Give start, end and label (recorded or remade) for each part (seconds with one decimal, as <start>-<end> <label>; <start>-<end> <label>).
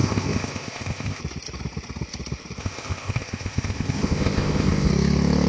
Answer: 0.0-1.2 remade; 1.2-2.6 recorded; 2.6-4.9 remade; 4.9-5.5 recorded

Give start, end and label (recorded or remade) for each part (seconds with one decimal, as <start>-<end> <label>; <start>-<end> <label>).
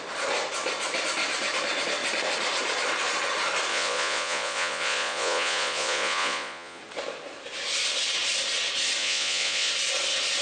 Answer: 0.0-3.7 recorded; 3.7-6.8 remade; 6.8-9.0 recorded; 9.0-9.7 remade; 9.7-10.4 recorded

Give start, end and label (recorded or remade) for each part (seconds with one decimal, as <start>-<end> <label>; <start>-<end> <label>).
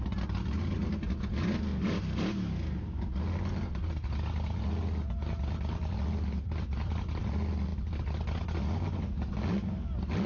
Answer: 0.0-10.3 recorded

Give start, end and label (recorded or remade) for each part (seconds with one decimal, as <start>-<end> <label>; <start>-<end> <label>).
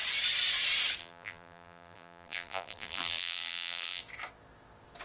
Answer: 0.0-1.0 recorded; 1.0-4.0 remade; 4.0-5.0 recorded